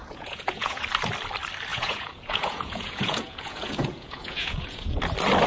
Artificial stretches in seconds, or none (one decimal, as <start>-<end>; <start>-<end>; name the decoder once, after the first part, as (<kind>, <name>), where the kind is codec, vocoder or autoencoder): 0.0-0.8 (vocoder, Vocos); 1.7-5.0